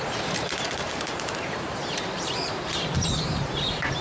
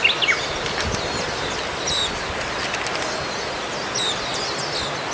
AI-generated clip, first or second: first